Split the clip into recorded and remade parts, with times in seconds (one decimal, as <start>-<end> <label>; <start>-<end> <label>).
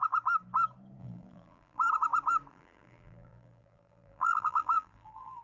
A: 0.0-1.0 recorded; 1.0-1.8 remade; 1.8-2.5 recorded; 2.5-5.4 remade